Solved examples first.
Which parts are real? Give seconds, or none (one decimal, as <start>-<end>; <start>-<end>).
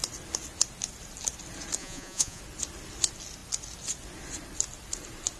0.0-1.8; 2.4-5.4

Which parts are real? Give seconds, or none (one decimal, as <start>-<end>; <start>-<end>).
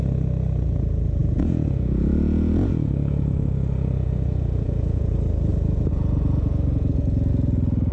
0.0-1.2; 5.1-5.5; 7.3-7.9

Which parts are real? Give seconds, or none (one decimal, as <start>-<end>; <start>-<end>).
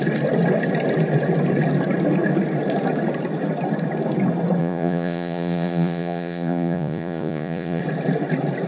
0.0-4.6; 7.8-8.7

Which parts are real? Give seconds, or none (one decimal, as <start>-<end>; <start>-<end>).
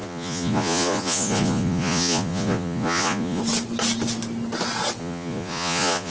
3.4-5.0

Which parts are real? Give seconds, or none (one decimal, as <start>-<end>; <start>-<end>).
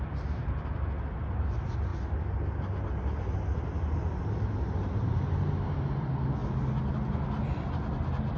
0.0-8.4